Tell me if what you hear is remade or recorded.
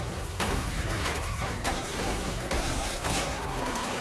remade